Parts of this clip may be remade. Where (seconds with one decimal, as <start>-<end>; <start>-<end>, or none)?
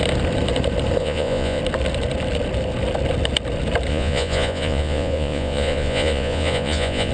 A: 1.0-1.6; 3.9-7.1